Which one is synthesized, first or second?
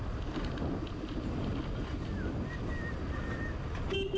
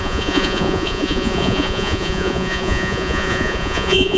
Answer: second